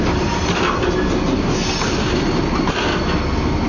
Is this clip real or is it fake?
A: real